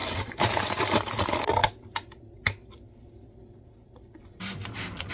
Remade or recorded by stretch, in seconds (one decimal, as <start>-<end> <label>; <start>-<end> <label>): 0.0-1.2 remade; 1.2-5.1 recorded